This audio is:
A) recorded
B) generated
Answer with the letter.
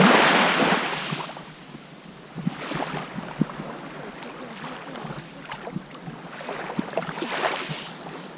A